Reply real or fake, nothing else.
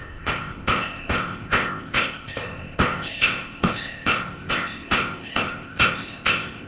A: fake